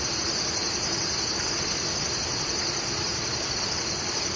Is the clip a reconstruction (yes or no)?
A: no